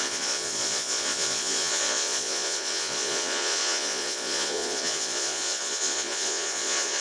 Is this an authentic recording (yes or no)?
no